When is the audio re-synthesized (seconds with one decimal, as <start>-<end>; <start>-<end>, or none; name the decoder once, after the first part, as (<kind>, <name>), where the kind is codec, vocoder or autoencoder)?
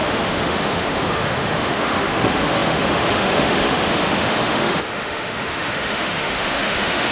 0.0-7.1 (autoencoder, DAC-VAE)